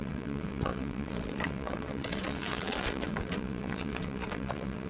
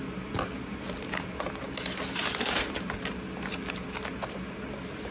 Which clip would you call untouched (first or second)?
second